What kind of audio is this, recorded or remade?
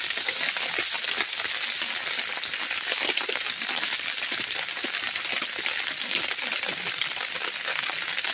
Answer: recorded